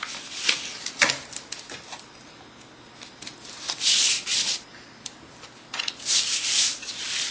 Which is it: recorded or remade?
recorded